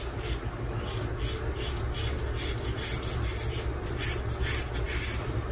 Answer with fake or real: real